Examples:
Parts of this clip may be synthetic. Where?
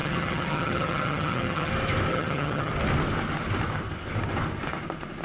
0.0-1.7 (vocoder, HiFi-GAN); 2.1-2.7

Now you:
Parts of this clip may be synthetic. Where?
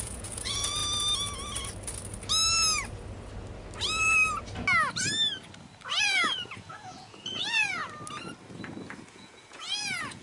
0.0-0.8 (vocoder, Vocos); 6.0-7.8; 9.1-10.2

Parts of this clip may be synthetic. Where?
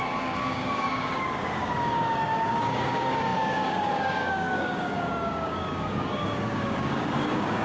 0.0-7.6 (codec, DAC)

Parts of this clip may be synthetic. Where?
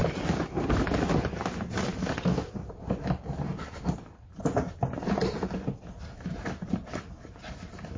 0.0-8.0 (vocoder, BigVGAN v2)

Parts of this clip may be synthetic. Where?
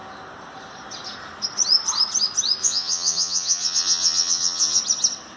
2.6-4.8 (vocoder, Vocos)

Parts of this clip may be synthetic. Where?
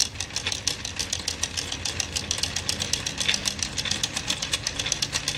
3.4-5.0 (vocoder, BigVGAN v2)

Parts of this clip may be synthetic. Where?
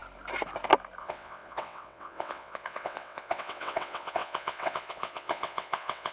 1.0-6.1 (vocoder, WaveNeXt)